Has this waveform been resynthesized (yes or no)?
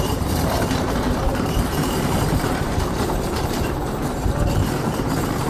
yes